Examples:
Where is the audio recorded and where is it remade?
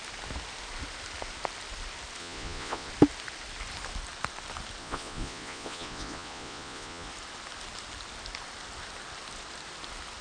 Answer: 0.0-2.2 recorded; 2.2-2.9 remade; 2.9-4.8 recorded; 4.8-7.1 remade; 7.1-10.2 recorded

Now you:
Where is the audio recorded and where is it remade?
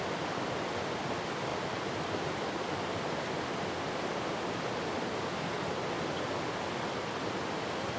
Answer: 0.0-8.0 recorded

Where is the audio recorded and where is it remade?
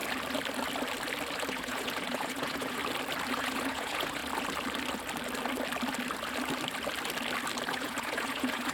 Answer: 0.0-1.5 recorded; 1.5-2.8 remade; 2.8-3.3 recorded; 3.3-4.2 remade; 4.2-7.7 recorded; 7.7-8.7 remade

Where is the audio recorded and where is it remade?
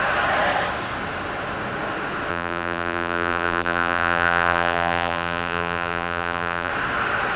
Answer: 0.0-2.3 recorded; 2.3-6.7 remade; 6.7-7.4 recorded